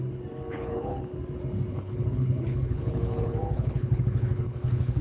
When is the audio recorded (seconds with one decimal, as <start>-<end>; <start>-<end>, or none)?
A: 0.0-0.5; 1.1-1.7